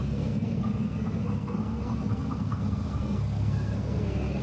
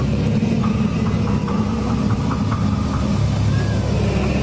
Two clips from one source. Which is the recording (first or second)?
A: second